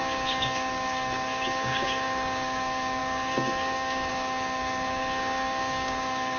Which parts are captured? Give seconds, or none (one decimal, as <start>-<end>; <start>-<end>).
none